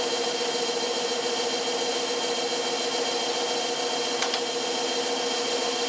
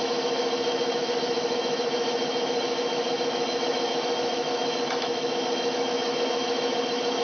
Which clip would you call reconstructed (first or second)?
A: second